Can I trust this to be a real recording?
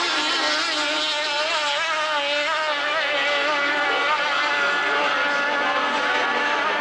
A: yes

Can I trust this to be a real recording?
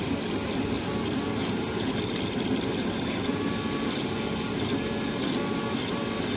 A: yes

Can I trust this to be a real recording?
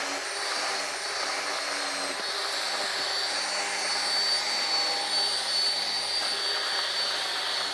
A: yes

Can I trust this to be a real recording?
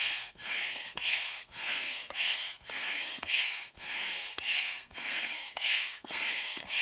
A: no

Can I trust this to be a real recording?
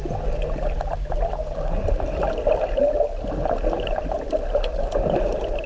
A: yes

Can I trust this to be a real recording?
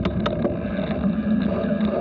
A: yes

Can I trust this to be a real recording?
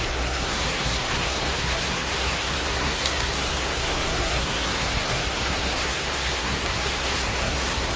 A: no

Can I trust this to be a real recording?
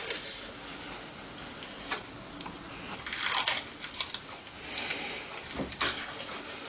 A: yes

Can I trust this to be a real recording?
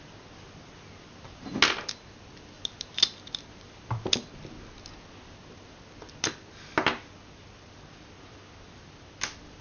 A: yes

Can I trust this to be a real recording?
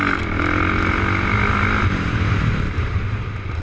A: yes